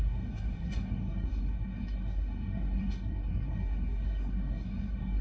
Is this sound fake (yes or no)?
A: yes